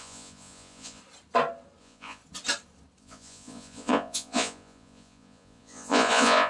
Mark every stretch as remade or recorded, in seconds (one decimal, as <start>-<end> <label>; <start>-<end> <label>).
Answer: 0.0-1.0 remade; 1.0-1.8 recorded; 1.8-2.2 remade; 2.2-3.0 recorded; 3.0-6.5 remade